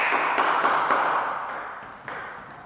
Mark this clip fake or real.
real